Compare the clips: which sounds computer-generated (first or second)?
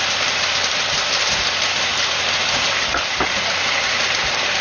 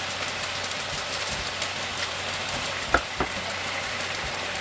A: first